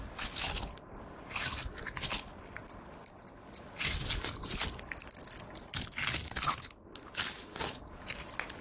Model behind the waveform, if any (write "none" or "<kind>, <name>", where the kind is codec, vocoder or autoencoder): none